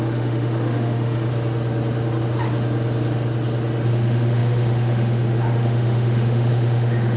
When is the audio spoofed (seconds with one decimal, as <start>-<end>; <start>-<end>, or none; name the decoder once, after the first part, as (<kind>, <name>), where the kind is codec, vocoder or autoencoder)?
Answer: 0.0-1.3 (autoencoder, DAC-VAE); 3.9-7.2